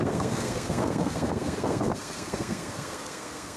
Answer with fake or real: fake